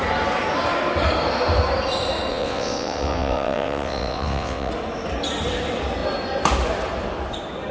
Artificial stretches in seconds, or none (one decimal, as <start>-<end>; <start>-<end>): 2.3-4.7